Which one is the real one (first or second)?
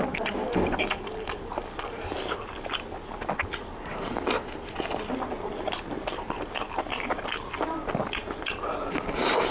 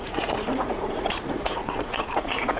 first